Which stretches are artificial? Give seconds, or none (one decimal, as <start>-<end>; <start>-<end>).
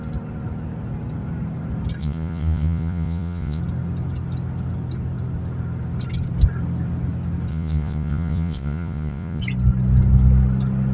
2.0-3.6; 7.5-9.4